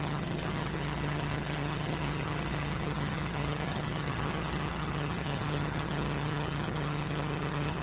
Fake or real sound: fake